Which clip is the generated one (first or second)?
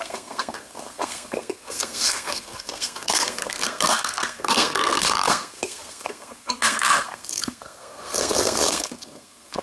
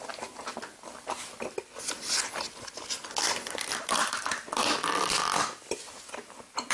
first